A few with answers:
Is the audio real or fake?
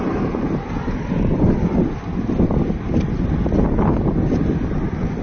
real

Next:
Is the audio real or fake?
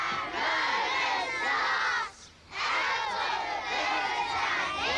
real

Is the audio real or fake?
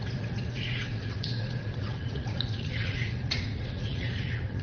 fake